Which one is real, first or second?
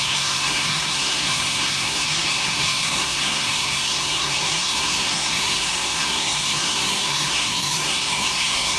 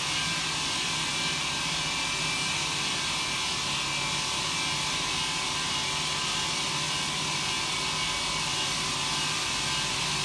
second